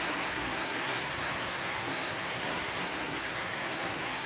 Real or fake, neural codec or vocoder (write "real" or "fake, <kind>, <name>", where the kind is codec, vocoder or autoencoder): fake, codec, SNAC